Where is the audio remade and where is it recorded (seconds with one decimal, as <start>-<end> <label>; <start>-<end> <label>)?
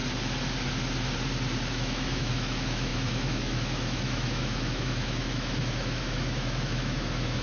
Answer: 0.0-1.7 recorded; 1.7-7.4 remade